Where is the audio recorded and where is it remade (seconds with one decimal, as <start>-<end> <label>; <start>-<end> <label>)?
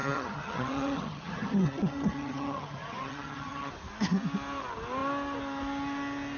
0.0-3.7 remade; 3.7-6.4 recorded